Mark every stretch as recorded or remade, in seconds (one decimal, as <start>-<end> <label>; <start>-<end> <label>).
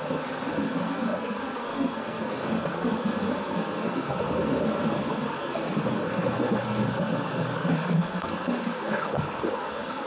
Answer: 0.0-10.1 remade